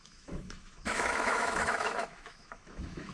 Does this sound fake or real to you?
fake